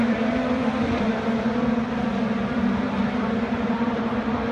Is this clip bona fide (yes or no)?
no